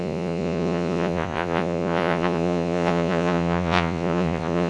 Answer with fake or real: fake